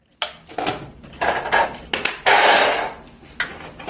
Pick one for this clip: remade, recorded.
recorded